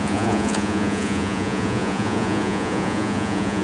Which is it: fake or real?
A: fake